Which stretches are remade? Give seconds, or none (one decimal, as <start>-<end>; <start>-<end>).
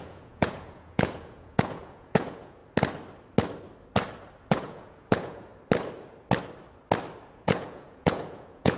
0.0-2.6; 4.5-5.5; 7.3-8.8